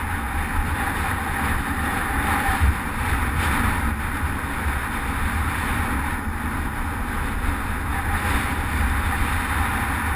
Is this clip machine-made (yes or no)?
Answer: no